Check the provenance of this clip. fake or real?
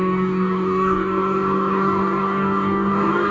fake